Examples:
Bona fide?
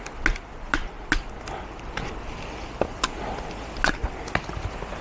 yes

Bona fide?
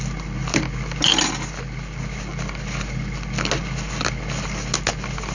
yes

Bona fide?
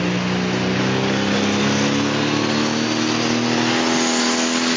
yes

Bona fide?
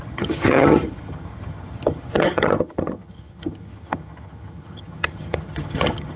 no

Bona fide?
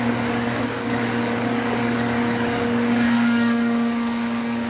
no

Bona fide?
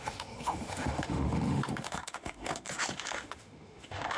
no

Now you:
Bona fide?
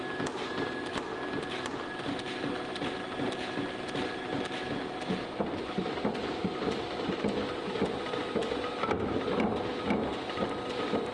yes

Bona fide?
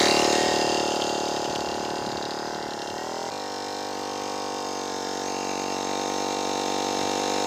yes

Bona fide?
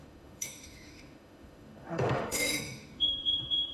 no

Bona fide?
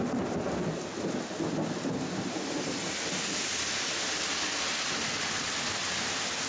yes